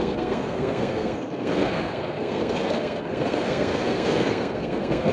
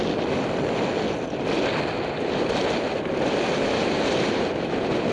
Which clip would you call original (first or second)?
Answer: second